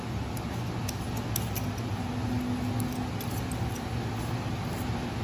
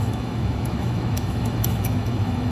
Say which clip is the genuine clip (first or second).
first